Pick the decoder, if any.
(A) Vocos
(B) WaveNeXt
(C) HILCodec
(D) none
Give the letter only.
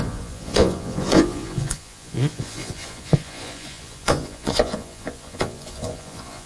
A